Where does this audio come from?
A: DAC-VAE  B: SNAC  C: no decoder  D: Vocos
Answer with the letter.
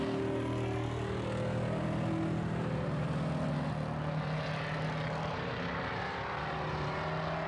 C